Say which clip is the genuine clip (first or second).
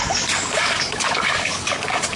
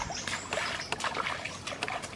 second